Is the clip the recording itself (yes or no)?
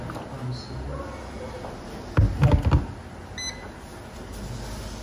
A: yes